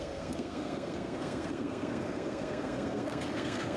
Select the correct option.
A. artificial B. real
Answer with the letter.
A